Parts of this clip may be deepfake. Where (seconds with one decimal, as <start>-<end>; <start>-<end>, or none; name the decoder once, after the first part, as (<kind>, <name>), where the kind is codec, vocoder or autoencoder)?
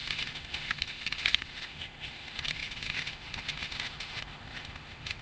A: 0.0-5.2 (autoencoder, DAC-VAE)